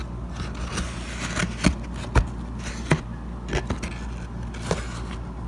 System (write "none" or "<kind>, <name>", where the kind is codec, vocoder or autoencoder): none